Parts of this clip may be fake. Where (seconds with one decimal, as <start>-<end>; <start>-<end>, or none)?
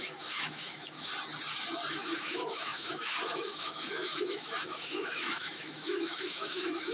0.0-1.1; 1.9-6.9